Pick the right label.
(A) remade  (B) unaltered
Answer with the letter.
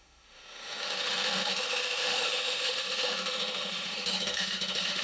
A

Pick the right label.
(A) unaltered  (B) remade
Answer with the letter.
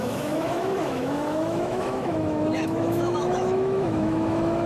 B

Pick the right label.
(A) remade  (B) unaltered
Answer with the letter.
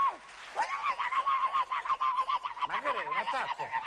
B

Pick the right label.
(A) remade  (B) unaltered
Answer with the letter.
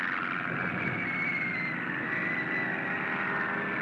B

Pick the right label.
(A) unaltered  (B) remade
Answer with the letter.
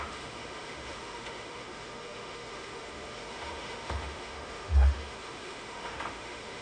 B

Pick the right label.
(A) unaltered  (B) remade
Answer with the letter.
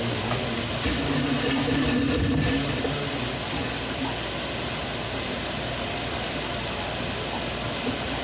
A